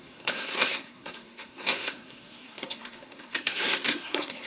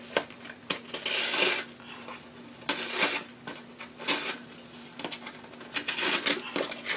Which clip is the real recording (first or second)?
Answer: second